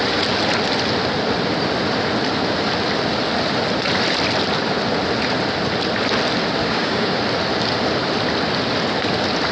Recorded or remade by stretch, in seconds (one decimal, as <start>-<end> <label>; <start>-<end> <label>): 0.0-6.6 recorded; 6.6-7.2 remade; 7.2-9.5 recorded